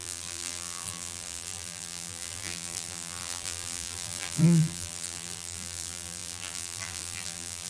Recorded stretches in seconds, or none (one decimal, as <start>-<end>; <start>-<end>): none